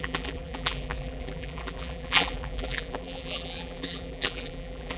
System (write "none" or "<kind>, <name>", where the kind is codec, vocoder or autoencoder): vocoder, BigVGAN v2